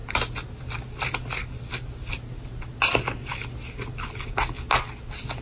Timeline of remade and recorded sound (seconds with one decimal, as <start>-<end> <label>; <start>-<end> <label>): 0.0-5.4 recorded